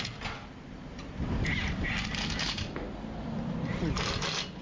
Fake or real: real